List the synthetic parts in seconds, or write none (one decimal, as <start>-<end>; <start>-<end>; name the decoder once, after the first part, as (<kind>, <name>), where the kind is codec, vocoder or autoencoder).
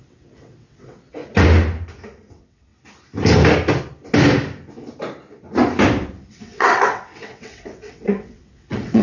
0.0-1.2 (vocoder, WaveNeXt); 2.3-2.7; 6.3-9.0